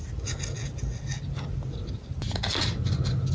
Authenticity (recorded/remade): recorded